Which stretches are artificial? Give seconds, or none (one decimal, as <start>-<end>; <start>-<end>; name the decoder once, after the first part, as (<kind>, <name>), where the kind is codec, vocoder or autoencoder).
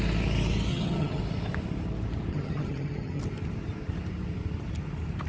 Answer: 0.7-1.2 (vocoder, HiFi-GAN); 2.3-3.2